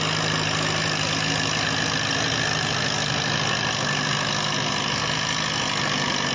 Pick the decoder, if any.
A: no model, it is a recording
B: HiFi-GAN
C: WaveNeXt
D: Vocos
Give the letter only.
A